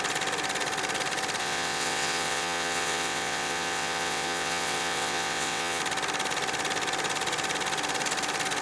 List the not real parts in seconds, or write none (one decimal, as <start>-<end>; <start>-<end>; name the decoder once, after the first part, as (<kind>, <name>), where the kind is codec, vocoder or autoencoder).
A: 1.4-5.8 (vocoder, WaveNeXt)